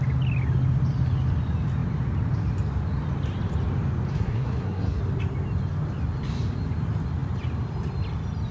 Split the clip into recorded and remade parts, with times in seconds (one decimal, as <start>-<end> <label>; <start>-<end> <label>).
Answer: 0.0-4.1 recorded; 4.1-5.0 remade; 5.0-8.5 recorded